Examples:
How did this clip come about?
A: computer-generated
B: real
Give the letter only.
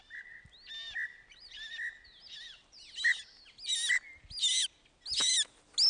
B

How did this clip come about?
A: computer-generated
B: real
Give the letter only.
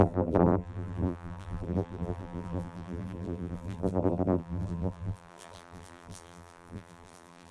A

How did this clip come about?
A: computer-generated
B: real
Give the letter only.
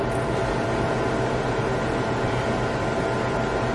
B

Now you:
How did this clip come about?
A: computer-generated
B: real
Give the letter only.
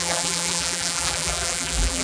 A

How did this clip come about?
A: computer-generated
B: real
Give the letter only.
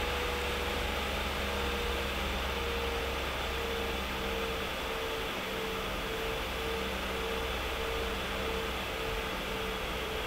B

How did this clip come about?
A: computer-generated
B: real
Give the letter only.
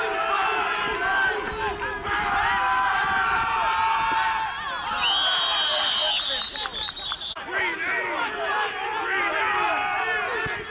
B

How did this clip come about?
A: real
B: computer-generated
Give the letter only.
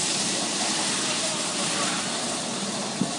B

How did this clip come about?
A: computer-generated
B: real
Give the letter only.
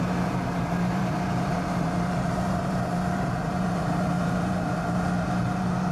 A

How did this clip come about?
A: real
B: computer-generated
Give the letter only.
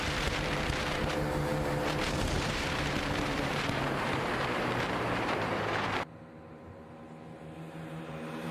B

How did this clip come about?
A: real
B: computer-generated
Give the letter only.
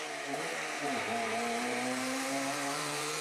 B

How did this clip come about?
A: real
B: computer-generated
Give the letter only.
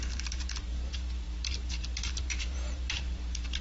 B